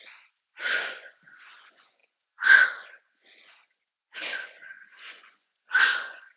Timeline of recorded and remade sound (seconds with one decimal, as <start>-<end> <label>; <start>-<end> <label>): 0.0-6.4 remade